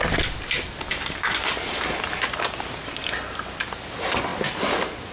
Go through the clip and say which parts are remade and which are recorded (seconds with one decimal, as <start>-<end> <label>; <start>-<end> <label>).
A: 0.0-5.1 recorded